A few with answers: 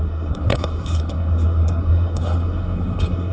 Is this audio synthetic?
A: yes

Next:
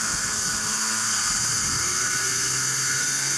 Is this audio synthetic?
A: yes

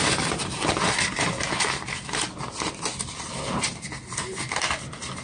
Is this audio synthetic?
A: no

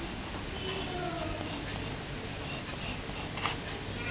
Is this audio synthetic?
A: no